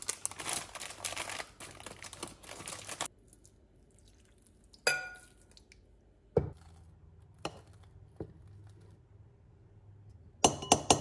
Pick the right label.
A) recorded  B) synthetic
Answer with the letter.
A